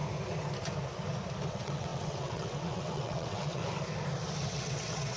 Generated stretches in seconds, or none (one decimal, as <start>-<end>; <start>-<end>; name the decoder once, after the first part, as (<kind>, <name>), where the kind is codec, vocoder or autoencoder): 1.5-3.6 (vocoder, WaveNeXt); 4.5-5.2